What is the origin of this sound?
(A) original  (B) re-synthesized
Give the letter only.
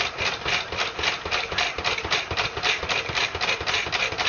A